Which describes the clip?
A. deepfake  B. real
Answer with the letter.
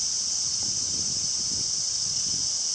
B